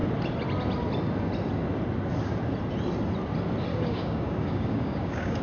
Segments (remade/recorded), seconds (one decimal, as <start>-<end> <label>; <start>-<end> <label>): 0.0-3.7 recorded; 3.7-5.4 remade